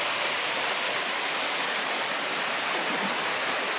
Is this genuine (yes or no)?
yes